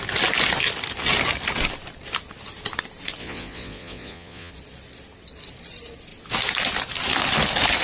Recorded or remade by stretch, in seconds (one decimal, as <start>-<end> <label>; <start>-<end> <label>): 0.0-3.2 recorded; 3.2-4.5 remade; 4.5-7.8 recorded